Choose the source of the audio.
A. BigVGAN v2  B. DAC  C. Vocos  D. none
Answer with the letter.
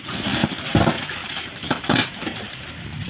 A